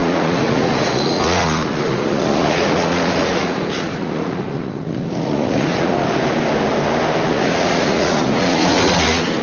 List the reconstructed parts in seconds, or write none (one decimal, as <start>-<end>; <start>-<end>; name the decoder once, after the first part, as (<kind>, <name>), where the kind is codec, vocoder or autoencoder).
0.0-6.0 (vocoder, Vocos); 7.2-9.4